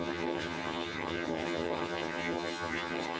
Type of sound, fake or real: fake